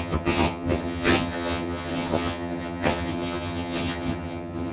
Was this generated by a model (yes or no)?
yes